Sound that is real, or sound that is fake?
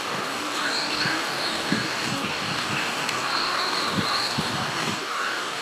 fake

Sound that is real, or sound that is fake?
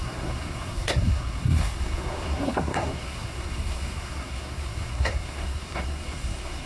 fake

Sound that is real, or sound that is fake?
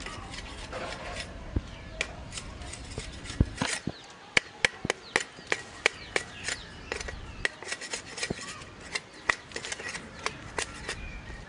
real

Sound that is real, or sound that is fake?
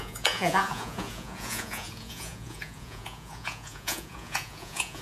fake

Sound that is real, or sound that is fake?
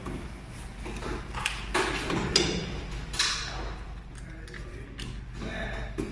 real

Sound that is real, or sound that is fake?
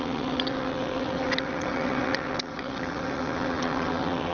fake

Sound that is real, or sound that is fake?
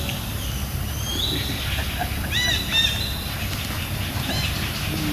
real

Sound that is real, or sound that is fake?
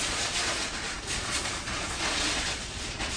fake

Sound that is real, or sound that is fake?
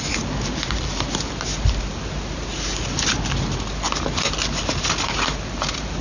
real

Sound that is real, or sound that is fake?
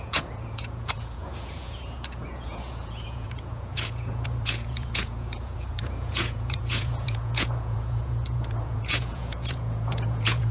fake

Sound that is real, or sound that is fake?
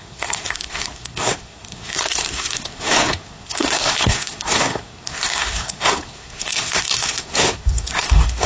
fake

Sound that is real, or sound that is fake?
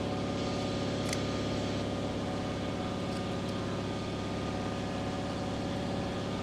real